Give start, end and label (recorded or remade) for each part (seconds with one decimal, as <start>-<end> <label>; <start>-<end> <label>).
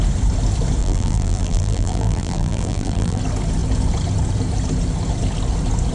0.0-0.8 recorded; 0.8-3.2 remade; 3.2-5.9 recorded